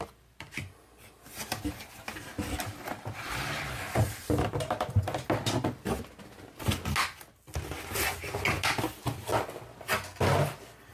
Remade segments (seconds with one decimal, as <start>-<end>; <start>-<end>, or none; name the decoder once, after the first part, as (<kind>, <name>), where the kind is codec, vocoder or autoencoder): none